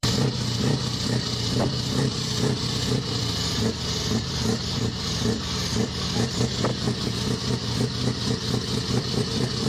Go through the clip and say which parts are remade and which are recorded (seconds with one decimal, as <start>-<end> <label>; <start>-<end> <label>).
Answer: 0.0-6.7 remade; 6.7-8.9 recorded; 8.9-9.7 remade